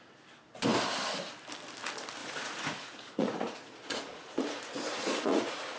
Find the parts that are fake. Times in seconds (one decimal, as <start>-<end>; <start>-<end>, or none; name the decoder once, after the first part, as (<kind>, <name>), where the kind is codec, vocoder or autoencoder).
2.2-5.8 (vocoder, Vocos)